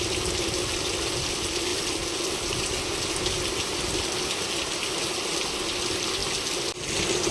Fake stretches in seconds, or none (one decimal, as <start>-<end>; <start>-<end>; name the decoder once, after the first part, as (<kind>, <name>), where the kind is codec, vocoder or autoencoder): none